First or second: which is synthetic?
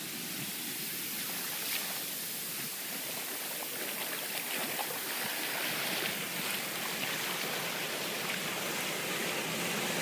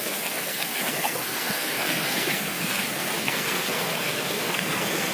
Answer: second